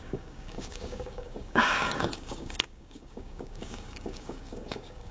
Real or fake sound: fake